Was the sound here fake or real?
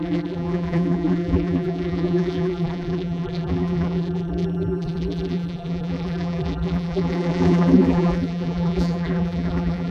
fake